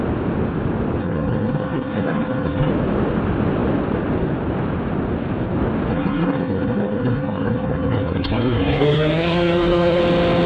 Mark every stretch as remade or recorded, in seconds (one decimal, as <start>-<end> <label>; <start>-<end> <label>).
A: 0.0-1.0 recorded; 1.0-2.7 remade; 2.7-5.9 recorded; 5.9-10.0 remade; 10.0-10.5 recorded